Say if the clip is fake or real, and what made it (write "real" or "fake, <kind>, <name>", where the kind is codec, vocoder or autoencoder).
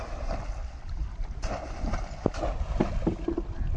real